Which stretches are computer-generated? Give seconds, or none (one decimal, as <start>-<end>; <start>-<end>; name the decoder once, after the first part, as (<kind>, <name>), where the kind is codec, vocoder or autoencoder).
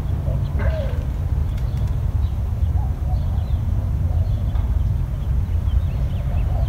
1.4-5.2 (vocoder, BigVGAN v2)